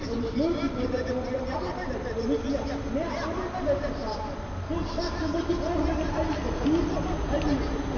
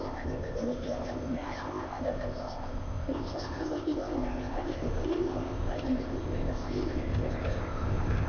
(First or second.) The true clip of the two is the first